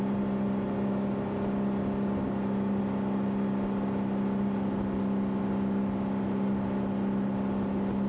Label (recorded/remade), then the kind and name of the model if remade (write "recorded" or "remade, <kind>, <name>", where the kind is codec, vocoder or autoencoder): recorded